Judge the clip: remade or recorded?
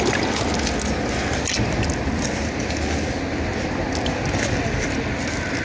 recorded